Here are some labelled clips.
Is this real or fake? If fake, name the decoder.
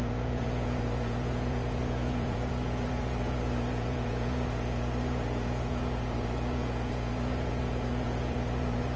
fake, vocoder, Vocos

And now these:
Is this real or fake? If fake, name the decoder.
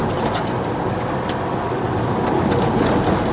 real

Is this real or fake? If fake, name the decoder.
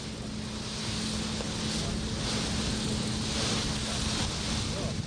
real